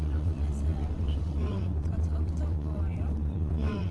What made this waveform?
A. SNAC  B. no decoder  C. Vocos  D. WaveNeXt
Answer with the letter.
D